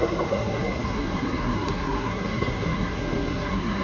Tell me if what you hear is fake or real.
fake